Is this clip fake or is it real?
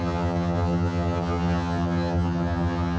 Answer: fake